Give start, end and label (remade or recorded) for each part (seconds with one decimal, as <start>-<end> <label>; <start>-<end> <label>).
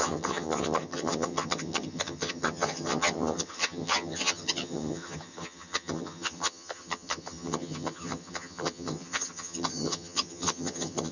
0.0-11.1 remade